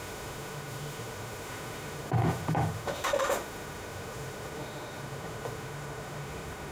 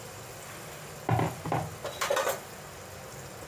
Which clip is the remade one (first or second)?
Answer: first